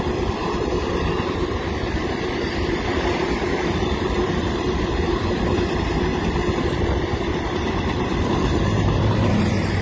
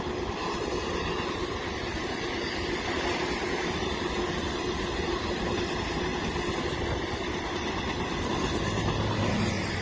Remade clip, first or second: first